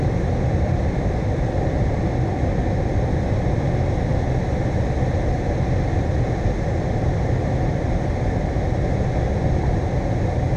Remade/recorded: recorded